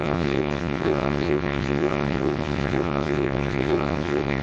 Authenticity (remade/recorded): remade